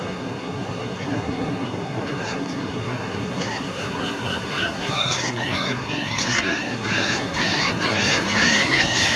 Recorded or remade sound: remade